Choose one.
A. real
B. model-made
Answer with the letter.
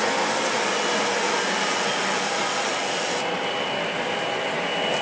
A